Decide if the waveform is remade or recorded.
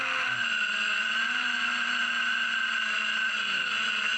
recorded